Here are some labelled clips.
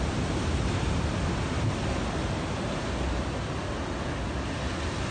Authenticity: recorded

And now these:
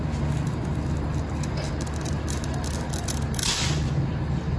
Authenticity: recorded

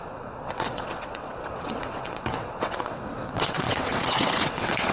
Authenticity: remade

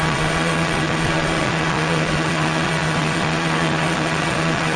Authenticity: remade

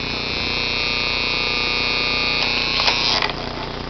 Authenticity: recorded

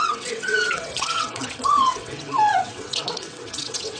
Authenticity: remade